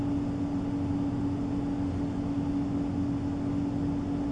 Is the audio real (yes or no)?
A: yes